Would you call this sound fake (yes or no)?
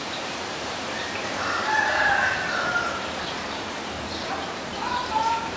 yes